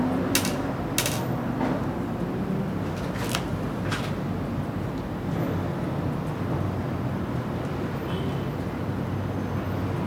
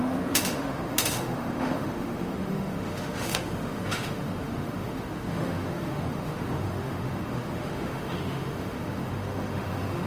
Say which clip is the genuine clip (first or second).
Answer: first